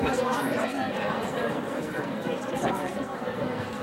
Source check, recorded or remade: remade